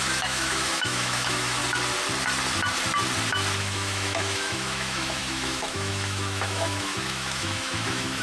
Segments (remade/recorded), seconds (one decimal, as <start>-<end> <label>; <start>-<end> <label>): 0.0-1.6 remade; 1.6-3.6 recorded; 3.6-8.2 remade